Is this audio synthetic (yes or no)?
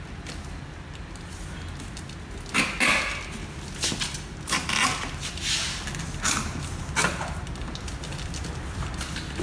no